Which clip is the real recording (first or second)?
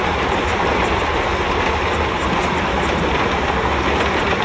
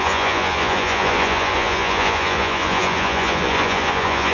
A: first